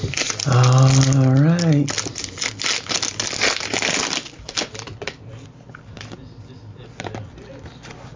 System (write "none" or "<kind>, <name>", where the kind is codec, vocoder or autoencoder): none